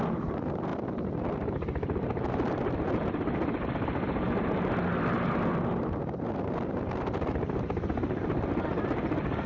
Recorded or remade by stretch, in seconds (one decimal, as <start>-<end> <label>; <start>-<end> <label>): 0.0-9.5 recorded